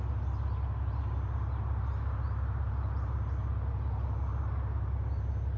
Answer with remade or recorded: recorded